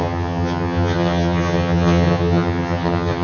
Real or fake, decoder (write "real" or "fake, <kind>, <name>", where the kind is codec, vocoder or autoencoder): fake, vocoder, HiFi-GAN